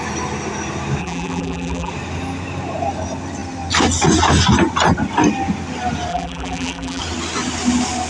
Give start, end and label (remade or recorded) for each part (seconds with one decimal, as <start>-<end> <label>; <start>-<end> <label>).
0.0-1.0 recorded; 1.0-1.9 remade; 1.9-6.1 recorded; 6.1-7.0 remade; 7.0-8.1 recorded